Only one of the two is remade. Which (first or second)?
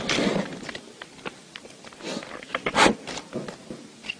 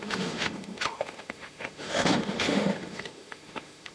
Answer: second